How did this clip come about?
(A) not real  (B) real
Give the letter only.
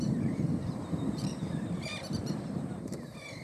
A